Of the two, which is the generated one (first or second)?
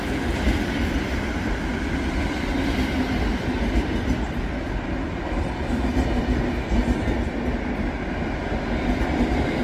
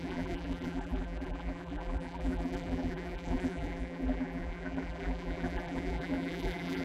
second